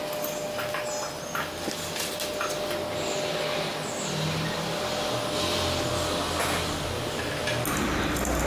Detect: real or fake real